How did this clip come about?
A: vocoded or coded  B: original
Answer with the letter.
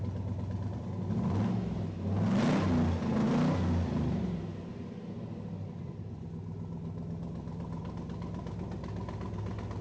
B